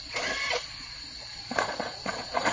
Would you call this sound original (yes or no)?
no